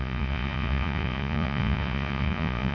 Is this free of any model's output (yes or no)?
no